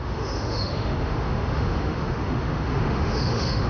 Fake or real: fake